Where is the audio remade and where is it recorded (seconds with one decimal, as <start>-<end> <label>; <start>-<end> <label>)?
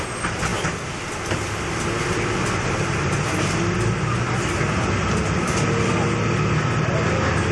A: 0.0-7.5 recorded